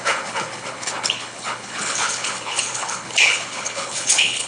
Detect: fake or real fake